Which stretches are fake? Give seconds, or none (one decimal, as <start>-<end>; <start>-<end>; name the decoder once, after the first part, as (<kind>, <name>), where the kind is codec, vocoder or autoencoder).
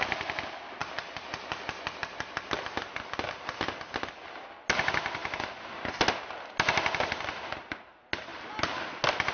none